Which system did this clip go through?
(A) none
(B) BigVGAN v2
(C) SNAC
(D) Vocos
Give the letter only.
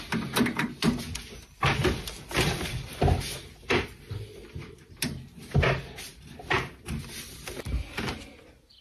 A